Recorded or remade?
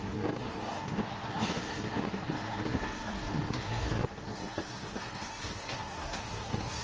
remade